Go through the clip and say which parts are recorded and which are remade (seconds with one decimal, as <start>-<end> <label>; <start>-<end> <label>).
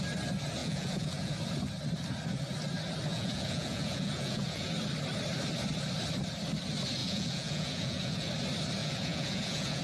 0.0-0.6 recorded; 0.6-1.3 remade; 1.3-3.1 recorded; 3.1-4.7 remade; 4.7-7.0 recorded; 7.0-8.3 remade; 8.3-8.8 recorded; 8.8-9.8 remade